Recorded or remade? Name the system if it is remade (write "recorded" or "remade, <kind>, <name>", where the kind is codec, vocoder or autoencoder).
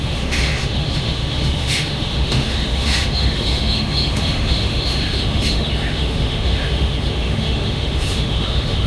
remade, autoencoder, DAC-VAE